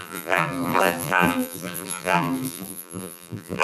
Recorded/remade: remade